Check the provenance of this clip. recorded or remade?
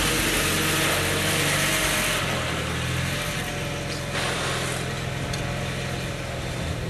recorded